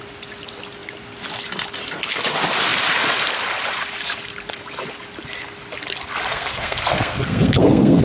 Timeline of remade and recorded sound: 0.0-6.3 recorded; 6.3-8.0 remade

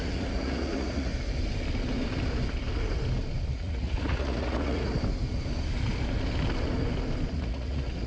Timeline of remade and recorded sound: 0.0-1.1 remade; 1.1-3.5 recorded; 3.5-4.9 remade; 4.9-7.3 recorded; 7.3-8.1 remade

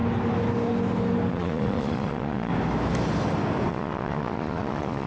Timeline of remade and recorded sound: 0.0-1.3 recorded; 1.3-2.5 remade; 2.5-3.7 recorded; 3.7-5.1 remade